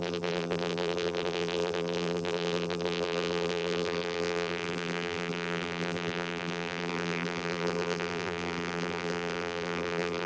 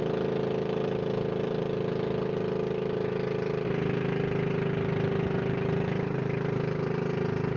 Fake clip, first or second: first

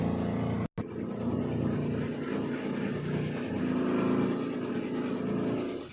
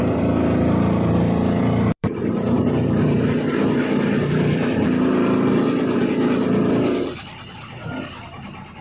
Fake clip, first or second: second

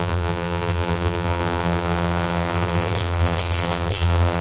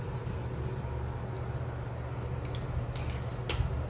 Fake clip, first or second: first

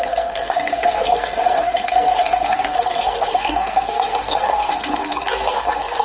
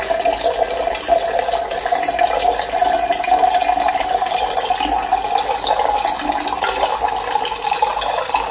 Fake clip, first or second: first